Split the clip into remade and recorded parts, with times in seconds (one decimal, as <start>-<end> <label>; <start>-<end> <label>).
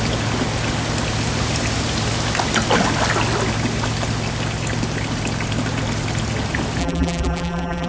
0.0-6.8 recorded; 6.8-7.9 remade